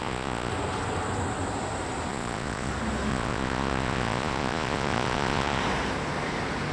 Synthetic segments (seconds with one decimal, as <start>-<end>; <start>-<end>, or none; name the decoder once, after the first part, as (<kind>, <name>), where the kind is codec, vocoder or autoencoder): 0.0-0.5 (vocoder, Vocos); 2.1-2.7; 3.1-5.6